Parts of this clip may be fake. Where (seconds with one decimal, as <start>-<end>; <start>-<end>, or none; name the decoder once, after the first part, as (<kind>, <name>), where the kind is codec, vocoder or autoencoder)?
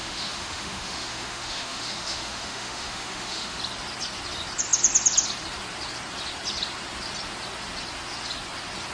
0.0-3.6 (autoencoder, DAC-VAE)